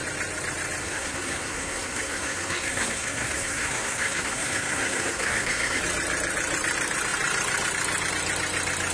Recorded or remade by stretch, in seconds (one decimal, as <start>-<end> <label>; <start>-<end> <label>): 0.0-0.8 recorded; 0.8-5.8 remade; 5.8-8.9 recorded